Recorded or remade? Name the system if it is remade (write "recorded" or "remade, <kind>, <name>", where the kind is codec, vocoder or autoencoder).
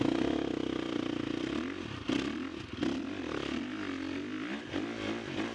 recorded